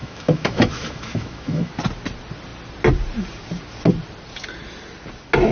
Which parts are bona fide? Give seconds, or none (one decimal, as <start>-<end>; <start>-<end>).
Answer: 1.7-5.5